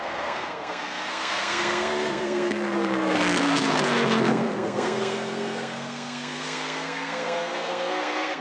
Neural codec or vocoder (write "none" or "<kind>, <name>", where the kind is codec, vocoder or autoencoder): codec, SNAC